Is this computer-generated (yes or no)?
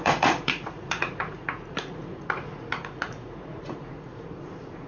yes